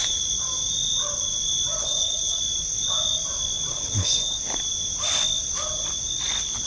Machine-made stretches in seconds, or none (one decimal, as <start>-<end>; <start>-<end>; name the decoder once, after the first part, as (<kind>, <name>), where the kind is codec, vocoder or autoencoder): 1.8-2.4 (codec, HILCodec); 3.7-4.4